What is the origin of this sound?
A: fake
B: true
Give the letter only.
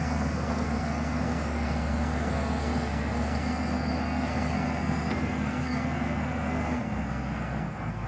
A